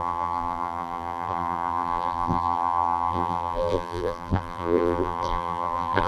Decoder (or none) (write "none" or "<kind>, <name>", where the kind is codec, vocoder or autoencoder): vocoder, BigVGAN v2